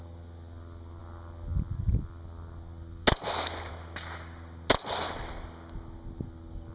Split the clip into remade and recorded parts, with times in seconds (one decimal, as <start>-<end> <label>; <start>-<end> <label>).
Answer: 0.0-6.7 recorded